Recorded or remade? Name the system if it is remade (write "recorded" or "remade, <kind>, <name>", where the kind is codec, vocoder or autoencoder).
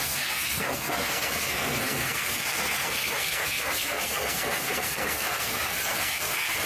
remade, codec, SNAC